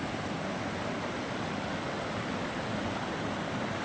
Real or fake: real